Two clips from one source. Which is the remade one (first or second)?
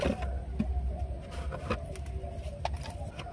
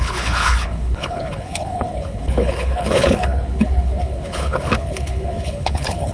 second